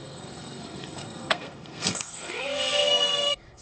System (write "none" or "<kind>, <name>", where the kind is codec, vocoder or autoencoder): codec, SNAC